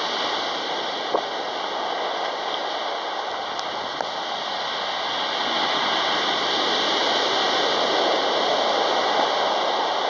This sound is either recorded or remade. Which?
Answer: recorded